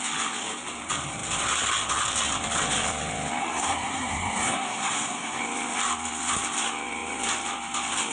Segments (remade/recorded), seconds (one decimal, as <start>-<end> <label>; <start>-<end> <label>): 0.0-3.4 recorded; 3.4-5.4 remade; 5.4-8.1 recorded